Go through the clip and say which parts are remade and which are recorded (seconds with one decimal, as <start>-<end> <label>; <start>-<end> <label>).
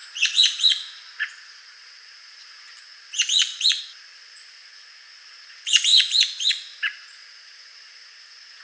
0.0-8.6 remade